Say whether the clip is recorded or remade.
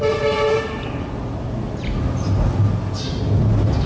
recorded